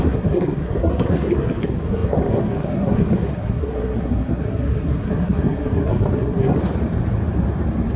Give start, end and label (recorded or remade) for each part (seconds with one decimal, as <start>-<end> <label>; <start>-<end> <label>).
0.0-6.6 remade; 6.6-8.0 recorded